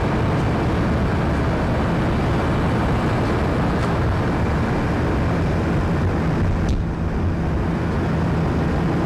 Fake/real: real